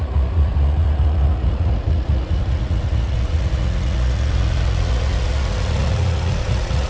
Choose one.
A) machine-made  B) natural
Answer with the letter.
A